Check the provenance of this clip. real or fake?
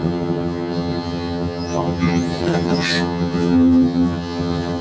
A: fake